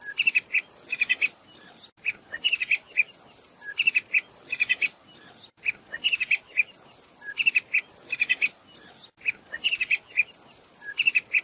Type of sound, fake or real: real